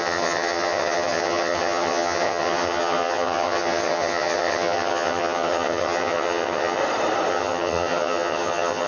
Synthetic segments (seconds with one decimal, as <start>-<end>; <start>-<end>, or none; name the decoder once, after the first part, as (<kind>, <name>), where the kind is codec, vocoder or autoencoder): 0.0-6.8 (vocoder, HiFi-GAN); 7.3-8.9